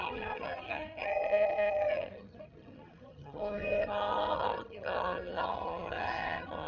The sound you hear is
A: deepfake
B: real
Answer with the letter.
A